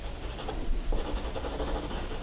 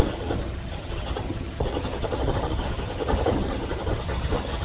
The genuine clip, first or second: first